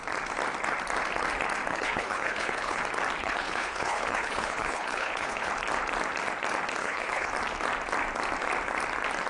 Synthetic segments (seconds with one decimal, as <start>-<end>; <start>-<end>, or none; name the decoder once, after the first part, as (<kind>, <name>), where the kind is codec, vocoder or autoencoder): 1.7-2.8 (codec, HILCodec); 3.2-5.5; 6.8-7.3